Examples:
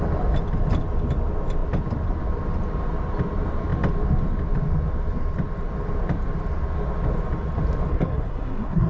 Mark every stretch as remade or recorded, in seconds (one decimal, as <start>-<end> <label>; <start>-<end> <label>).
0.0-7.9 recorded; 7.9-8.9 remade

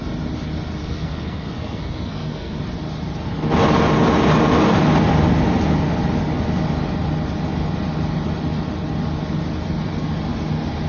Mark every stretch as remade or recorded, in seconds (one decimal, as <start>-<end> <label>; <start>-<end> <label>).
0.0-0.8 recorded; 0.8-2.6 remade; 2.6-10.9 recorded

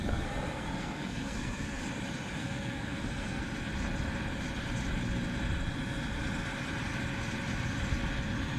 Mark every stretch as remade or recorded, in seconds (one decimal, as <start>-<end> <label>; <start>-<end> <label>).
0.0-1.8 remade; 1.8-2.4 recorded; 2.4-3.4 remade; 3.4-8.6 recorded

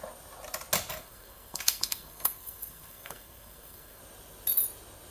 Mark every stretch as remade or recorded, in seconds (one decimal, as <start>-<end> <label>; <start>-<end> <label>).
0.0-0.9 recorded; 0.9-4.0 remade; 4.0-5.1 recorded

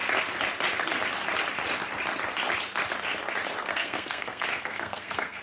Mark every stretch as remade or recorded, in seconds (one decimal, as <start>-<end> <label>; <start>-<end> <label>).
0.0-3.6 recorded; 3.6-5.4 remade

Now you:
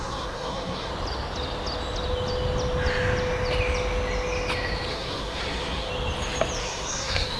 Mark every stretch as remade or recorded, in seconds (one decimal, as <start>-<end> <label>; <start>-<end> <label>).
0.0-0.9 remade; 0.9-4.9 recorded; 4.9-5.9 remade; 5.9-6.6 recorded; 6.6-7.4 remade

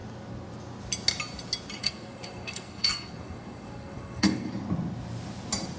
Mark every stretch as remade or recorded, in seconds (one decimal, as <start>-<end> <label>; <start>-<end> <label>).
0.0-1.8 recorded; 1.8-4.5 remade; 4.5-5.8 recorded

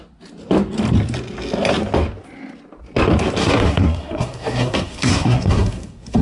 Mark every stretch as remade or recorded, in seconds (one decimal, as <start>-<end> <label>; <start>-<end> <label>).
0.0-3.4 recorded; 3.4-6.2 remade